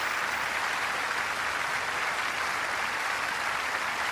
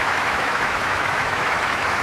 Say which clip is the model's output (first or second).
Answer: second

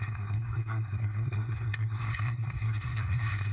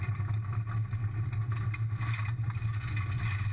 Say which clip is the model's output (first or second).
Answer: first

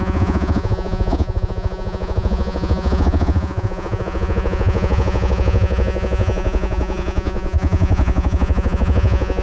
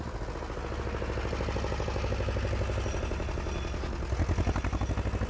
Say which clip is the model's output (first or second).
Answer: first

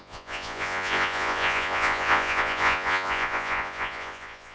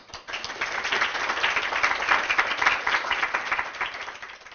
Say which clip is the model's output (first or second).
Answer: first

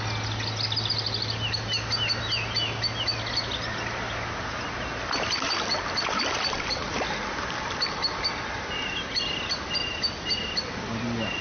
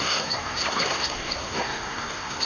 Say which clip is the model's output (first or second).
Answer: second